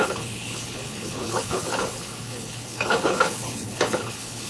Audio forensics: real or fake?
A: fake